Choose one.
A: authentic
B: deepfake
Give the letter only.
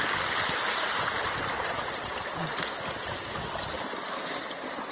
A